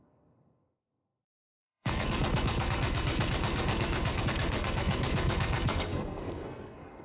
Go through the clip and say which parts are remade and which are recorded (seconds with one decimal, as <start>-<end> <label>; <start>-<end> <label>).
0.0-7.0 remade